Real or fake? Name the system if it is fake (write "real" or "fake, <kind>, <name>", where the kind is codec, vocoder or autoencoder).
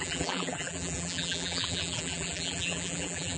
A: fake, vocoder, BigVGAN v2